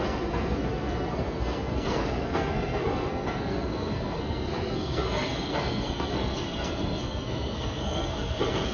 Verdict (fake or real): fake